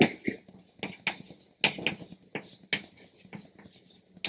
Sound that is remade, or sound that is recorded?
recorded